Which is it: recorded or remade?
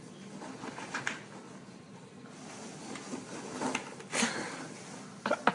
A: recorded